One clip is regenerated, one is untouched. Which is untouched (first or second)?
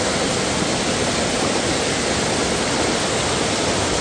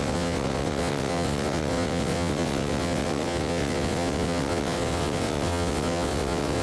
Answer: first